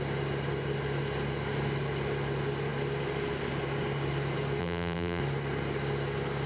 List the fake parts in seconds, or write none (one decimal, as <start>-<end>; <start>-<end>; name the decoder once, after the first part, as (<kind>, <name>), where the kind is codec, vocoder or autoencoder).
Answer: 4.6-5.2 (vocoder, BigVGAN v2)